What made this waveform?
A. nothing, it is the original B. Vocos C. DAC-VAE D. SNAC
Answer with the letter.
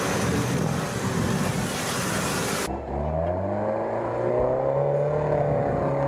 A